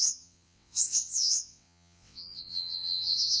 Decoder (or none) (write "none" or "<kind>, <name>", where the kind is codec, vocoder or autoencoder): vocoder, WaveNeXt